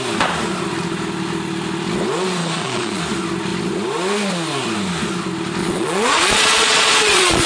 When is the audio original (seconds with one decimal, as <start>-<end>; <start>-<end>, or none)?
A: 0.0-2.4; 3.0-5.6